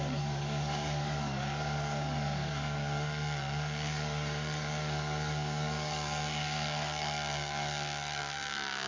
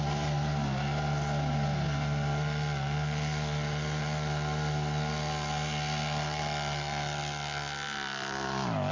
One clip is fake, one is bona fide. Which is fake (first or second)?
first